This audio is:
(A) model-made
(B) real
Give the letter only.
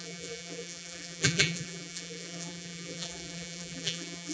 A